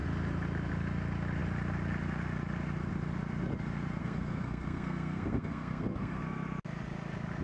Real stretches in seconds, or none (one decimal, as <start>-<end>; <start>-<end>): 0.0-4.0; 6.2-7.4